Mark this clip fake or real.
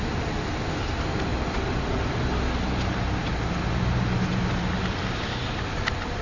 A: real